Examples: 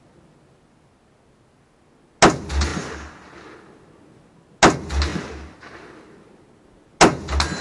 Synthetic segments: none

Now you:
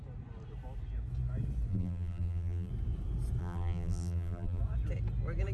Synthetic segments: 1.7-2.7; 3.4-4.6